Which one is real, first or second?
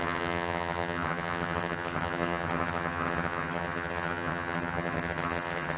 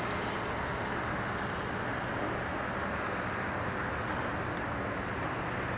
second